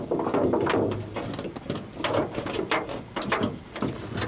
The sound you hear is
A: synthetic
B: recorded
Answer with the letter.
B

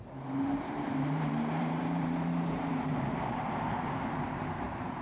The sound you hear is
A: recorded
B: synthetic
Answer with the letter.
B